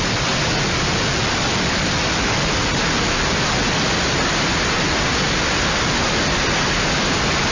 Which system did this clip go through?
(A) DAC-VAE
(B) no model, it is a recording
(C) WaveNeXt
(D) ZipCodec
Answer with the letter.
B